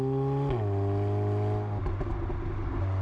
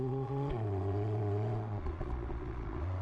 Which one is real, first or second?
first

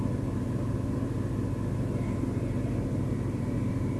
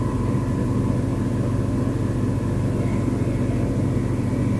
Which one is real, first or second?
second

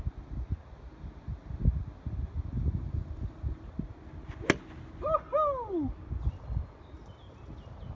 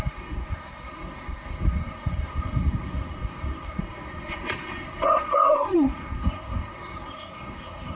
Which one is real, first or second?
first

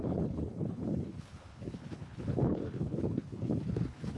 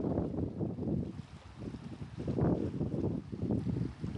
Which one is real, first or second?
second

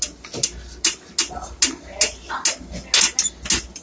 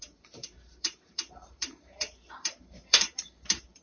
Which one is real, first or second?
first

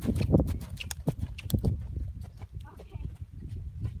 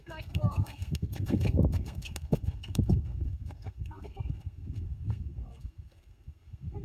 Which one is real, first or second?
first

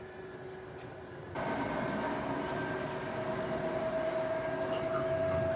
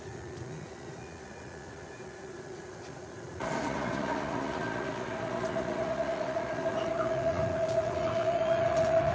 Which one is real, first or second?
first